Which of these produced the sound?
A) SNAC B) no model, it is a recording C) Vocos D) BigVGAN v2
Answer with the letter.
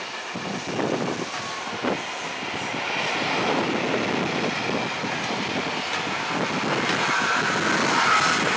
B